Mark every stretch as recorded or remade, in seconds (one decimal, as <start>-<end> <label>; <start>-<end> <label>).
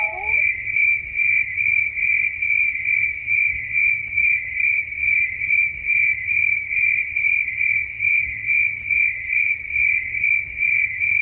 0.0-0.8 recorded; 0.8-1.9 remade; 1.9-2.6 recorded; 2.6-7.4 remade; 7.4-9.8 recorded; 9.8-10.3 remade; 10.3-11.2 recorded